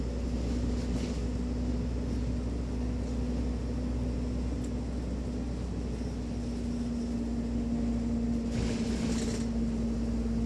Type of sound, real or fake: real